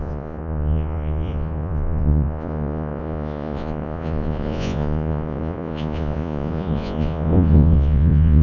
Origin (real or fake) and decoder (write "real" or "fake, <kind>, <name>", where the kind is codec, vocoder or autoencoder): fake, vocoder, Vocos